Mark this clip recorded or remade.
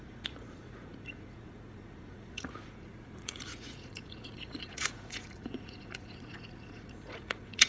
remade